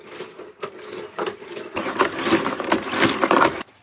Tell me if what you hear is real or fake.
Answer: real